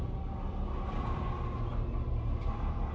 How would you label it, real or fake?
real